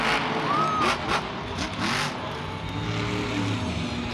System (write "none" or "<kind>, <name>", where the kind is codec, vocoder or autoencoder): none